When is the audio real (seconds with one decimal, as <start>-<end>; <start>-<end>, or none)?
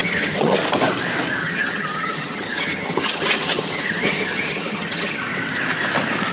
0.6-1.4; 5.2-6.3